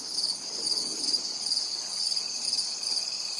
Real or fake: fake